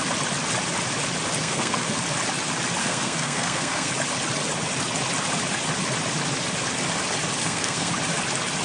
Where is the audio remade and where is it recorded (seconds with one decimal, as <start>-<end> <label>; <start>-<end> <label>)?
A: 0.0-1.4 recorded; 1.4-2.0 remade; 2.0-2.8 recorded; 2.8-3.9 remade; 3.9-7.4 recorded; 7.4-7.9 remade; 7.9-8.6 recorded